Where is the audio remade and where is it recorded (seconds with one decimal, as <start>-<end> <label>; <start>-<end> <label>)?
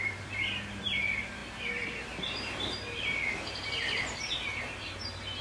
0.0-5.4 remade